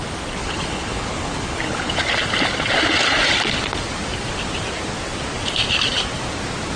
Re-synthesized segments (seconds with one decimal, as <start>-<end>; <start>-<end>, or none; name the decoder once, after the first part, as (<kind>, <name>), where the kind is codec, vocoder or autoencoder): 0.4-2.0 (codec, HILCodec)